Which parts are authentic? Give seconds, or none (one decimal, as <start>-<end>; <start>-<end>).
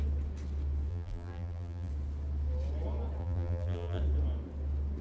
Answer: 0.0-0.9; 1.9-3.2; 4.0-5.0